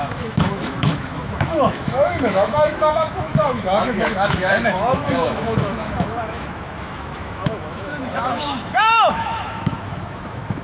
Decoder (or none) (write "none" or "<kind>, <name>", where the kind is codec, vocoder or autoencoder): autoencoder, DAC-VAE